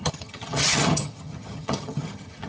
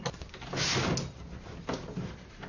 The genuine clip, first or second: second